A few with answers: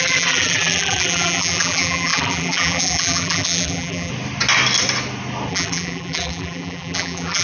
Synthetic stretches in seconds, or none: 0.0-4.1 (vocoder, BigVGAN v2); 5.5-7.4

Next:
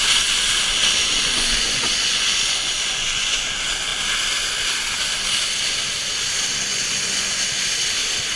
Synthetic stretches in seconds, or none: 1.0-3.4 (vocoder, Vocos); 6.7-7.4

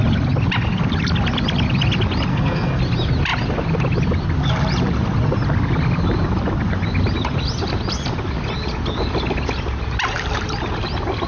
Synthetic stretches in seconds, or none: 2.3-2.8 (codec, SNAC)

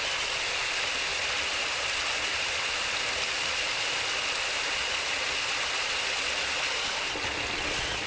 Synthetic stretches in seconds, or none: 1.1-4.4 (vocoder, BigVGAN v2)

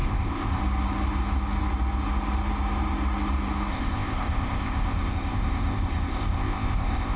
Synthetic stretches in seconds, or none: 0.0-0.6 (codec, ZipCodec); 3.7-7.2

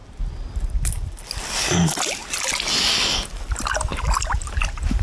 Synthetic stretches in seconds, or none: 1.5-5.0 (vocoder, BigVGAN v2)

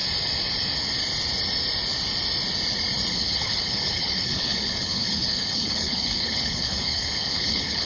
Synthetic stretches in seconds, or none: 3.1-7.9 (codec, HILCodec)

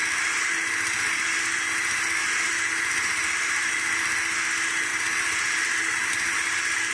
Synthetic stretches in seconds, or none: 0.0-0.5 (vocoder, BigVGAN v2); 2.2-3.7; 4.9-6.1